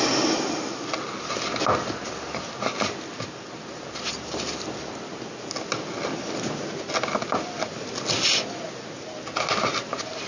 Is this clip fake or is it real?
real